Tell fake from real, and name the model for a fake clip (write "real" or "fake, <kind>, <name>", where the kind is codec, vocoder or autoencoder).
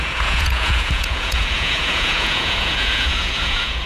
fake, vocoder, Vocos